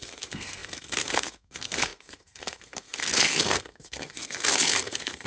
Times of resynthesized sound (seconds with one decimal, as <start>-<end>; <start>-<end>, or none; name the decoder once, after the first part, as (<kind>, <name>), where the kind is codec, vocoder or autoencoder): 0.0-5.3 (codec, SNAC)